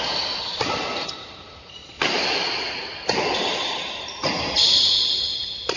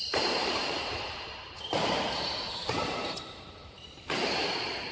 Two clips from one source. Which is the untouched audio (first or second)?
first